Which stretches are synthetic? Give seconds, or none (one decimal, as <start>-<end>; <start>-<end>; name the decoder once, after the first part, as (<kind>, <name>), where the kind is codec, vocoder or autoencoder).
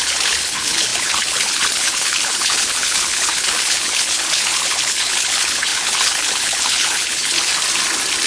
0.0-7.5 (codec, HILCodec)